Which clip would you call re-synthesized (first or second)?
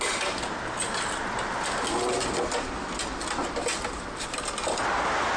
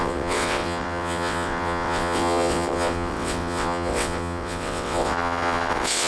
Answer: second